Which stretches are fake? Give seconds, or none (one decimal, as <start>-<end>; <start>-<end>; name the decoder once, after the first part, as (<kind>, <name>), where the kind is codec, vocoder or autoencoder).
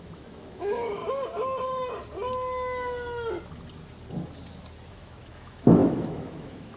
0.0-1.0 (autoencoder, DAC-VAE); 4.9-6.8